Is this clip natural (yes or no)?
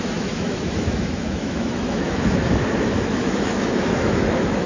no